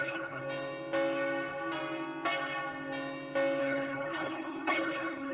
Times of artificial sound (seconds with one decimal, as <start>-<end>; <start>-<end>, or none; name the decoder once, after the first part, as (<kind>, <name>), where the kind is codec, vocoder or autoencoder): 0.0-0.4 (codec, HILCodec); 3.6-5.3